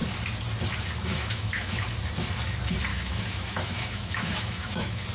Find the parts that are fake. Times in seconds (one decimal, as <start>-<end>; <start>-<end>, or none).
1.1-1.8; 2.9-5.1

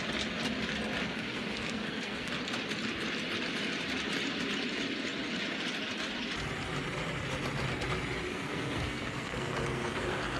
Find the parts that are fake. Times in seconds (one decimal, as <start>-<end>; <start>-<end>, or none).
1.0-2.3; 8.3-10.4

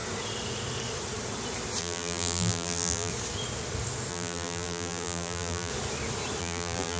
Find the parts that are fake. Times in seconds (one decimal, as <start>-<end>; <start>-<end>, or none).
1.8-3.1; 4.1-5.7; 6.4-7.0

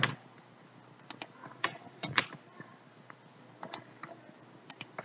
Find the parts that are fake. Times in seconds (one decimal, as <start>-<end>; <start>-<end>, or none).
1.4-2.2

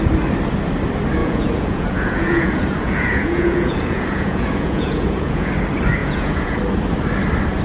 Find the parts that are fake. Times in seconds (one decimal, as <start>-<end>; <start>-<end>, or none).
1.2-5.5; 6.0-6.6

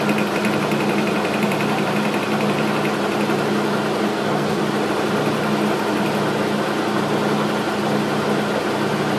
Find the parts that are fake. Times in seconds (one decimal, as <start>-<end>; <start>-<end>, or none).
4.1-4.6

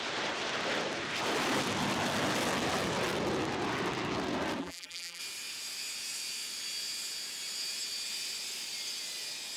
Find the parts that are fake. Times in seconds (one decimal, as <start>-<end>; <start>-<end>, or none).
4.6-5.2

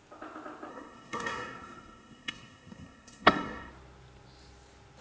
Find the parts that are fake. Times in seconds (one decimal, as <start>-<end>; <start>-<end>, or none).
0.7-3.7